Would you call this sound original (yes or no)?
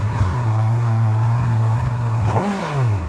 no